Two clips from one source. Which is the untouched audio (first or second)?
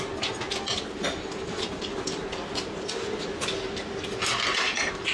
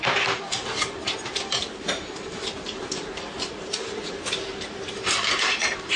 first